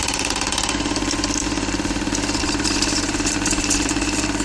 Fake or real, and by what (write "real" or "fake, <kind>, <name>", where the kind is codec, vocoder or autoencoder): fake, vocoder, BigVGAN v2